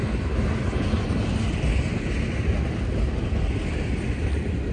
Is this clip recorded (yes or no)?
yes